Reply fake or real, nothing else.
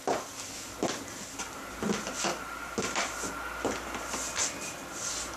real